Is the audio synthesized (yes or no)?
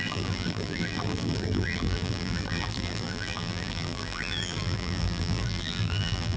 yes